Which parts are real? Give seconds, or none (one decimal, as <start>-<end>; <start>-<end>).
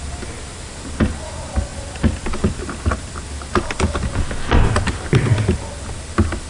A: 0.0-1.7; 3.1-6.5